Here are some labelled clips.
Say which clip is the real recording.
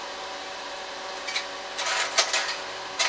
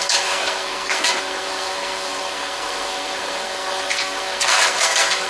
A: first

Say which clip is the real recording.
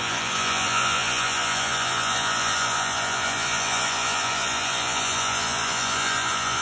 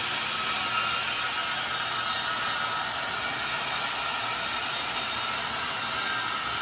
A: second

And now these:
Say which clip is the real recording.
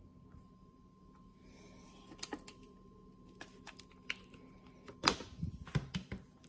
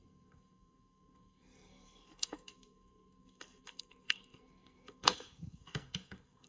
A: first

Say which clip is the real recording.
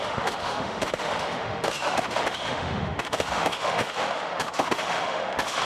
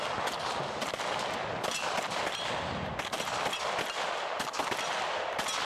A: second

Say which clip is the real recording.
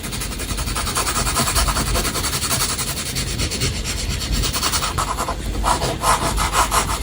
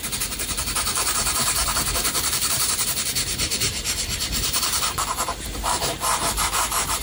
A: first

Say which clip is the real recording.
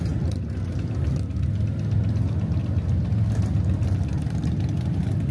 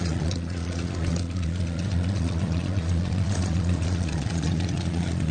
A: first